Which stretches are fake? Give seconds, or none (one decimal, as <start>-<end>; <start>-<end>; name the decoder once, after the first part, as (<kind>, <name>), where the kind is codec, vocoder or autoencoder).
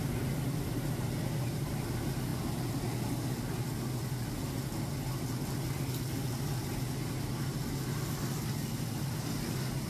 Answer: none